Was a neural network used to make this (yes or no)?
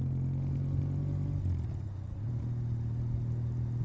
no